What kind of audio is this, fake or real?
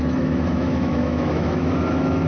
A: fake